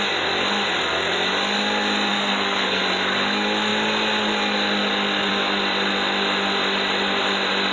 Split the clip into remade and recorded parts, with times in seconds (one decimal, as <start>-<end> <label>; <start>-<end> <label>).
0.0-2.1 recorded; 2.1-2.8 remade; 2.8-7.7 recorded